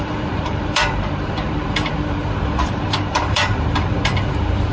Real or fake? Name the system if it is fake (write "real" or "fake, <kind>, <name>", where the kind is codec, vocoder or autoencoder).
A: fake, vocoder, BigVGAN v2